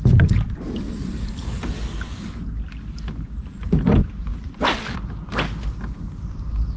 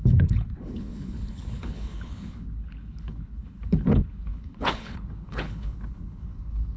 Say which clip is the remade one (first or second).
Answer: second